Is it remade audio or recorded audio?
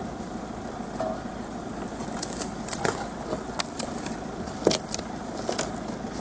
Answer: recorded